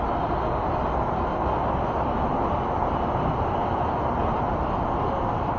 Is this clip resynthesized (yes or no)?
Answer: no